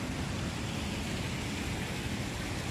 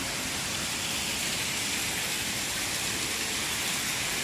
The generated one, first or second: second